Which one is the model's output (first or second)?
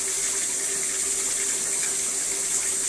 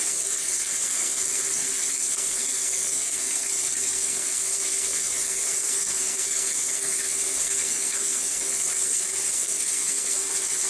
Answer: second